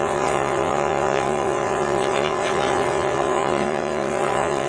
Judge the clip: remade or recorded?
remade